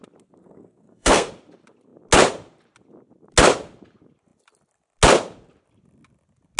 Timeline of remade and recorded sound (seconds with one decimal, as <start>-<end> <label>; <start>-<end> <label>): 0.0-0.4 recorded; 0.4-1.3 remade; 1.3-6.6 recorded